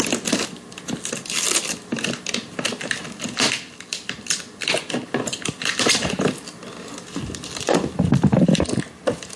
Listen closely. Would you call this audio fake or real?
real